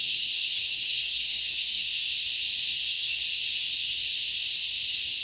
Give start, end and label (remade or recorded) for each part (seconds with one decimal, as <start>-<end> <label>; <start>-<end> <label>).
0.0-2.1 remade; 2.1-2.7 recorded; 2.7-3.2 remade; 3.2-5.2 recorded